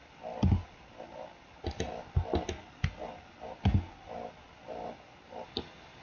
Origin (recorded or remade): recorded